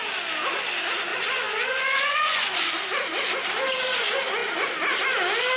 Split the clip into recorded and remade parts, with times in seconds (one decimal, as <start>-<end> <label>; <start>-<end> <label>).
0.0-1.1 recorded; 1.1-2.7 remade; 2.7-5.6 recorded